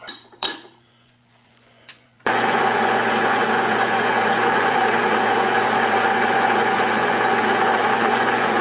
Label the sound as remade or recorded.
remade